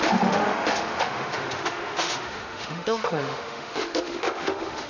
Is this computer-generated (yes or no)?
yes